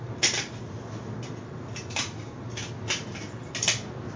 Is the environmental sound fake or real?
real